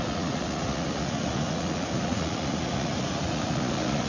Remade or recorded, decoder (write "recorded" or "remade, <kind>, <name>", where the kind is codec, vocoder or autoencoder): remade, vocoder, Vocos